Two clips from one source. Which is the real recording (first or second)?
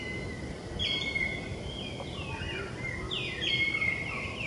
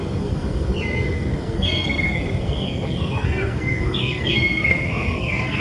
first